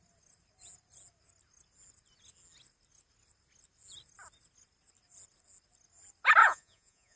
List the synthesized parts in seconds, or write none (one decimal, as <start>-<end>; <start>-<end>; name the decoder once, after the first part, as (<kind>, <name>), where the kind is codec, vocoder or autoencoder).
6.4-7.2 (vocoder, Vocos)